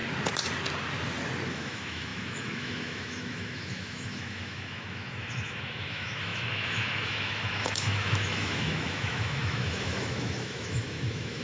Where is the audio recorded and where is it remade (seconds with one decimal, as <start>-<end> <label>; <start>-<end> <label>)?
0.0-1.5 recorded; 1.5-11.4 remade